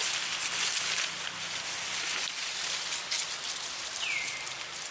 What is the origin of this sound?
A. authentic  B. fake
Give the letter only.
A